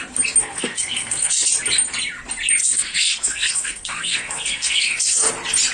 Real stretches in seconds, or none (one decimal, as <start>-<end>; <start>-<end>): 0.0-0.4; 1.5-2.6; 5.3-5.7